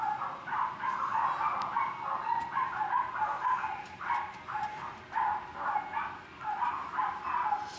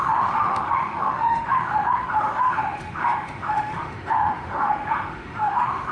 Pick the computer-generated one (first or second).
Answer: second